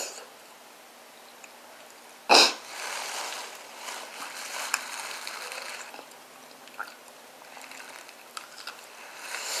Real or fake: real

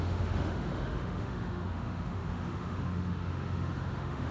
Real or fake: fake